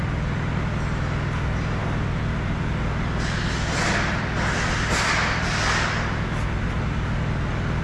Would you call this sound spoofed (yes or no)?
no